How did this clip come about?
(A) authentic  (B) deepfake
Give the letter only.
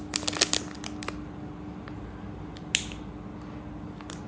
A